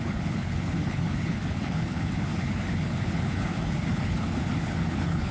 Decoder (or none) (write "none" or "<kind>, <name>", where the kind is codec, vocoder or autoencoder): codec, HILCodec